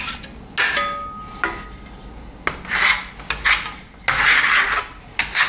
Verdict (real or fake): real